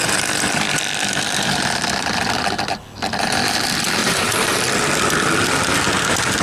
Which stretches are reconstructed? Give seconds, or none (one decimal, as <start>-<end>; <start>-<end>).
4.0-4.6